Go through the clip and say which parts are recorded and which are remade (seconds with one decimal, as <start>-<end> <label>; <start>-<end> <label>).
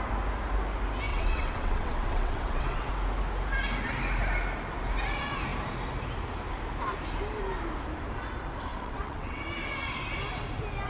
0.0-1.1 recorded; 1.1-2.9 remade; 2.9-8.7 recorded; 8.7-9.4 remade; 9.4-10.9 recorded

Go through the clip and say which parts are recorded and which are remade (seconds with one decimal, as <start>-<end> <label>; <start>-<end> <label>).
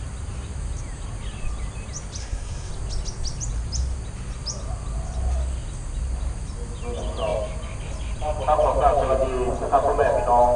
0.0-2.2 recorded; 2.2-2.7 remade; 2.7-10.6 recorded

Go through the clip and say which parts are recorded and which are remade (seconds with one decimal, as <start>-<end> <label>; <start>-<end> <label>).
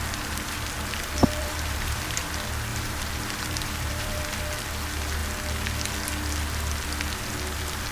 0.0-1.4 recorded; 1.4-2.2 remade; 2.2-2.7 recorded; 2.7-4.4 remade; 4.4-7.9 recorded